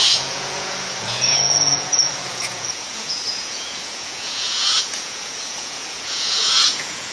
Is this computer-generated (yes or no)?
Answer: yes